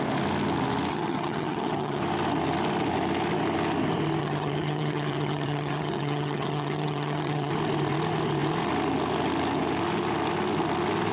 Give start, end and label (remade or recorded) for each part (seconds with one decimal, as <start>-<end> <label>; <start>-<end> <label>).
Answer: 0.0-0.9 recorded; 0.9-2.0 remade; 2.0-4.2 recorded; 4.2-7.5 remade; 7.5-11.1 recorded